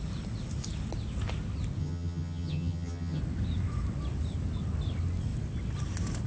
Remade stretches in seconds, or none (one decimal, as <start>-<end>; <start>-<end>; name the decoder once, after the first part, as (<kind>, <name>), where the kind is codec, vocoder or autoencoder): 1.8-3.2 (vocoder, HiFi-GAN)